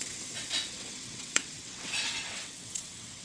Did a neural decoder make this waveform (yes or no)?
yes